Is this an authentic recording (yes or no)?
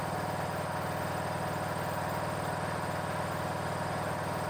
yes